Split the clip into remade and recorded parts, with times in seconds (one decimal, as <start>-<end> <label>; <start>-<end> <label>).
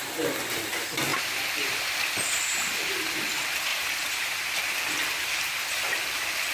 0.0-1.1 remade; 1.1-2.2 recorded; 2.2-3.7 remade; 3.7-6.5 recorded